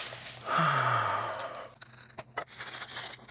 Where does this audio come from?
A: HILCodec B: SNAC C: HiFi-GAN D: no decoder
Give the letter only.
D